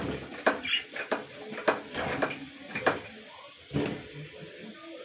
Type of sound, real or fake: real